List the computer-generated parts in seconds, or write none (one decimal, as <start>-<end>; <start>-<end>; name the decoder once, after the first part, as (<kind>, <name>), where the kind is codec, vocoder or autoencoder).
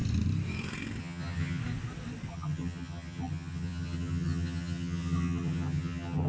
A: 1.0-1.6 (vocoder, HiFi-GAN); 2.3-6.3